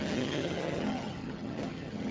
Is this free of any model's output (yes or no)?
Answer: no